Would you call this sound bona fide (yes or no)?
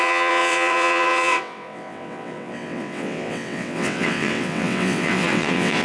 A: no